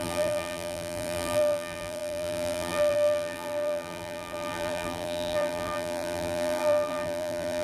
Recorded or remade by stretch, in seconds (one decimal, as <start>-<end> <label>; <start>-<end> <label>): 0.0-7.6 remade